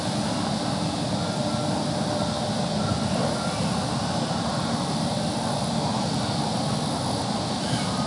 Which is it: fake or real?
real